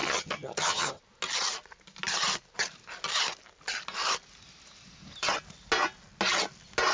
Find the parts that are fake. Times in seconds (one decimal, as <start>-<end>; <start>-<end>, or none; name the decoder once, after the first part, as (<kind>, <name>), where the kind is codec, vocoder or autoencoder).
0.0-1.0 (vocoder, HiFi-GAN)